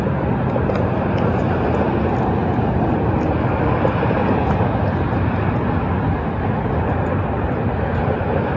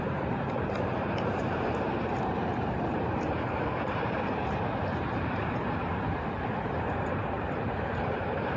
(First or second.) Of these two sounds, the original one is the first